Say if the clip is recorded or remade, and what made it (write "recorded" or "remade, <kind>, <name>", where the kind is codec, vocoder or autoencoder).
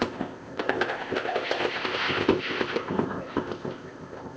remade, codec, ZipCodec